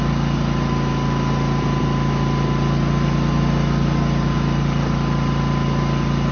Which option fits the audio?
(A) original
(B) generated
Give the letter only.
A